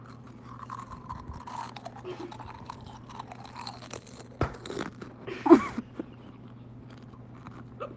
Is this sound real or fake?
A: real